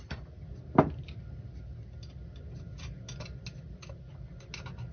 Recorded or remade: recorded